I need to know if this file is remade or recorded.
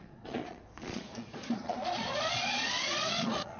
remade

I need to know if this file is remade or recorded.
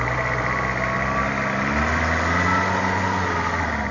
recorded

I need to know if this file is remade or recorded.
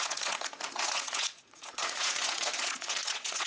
remade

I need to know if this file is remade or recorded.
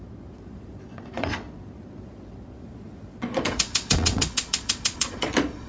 remade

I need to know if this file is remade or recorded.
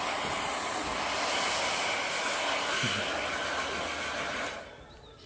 recorded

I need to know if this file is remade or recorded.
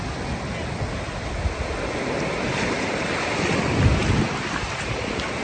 recorded